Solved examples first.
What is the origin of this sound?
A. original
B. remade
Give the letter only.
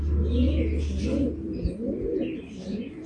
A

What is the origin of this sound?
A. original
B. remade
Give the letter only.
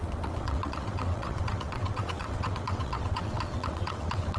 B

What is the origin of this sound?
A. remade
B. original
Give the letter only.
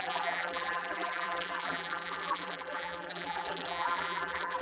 A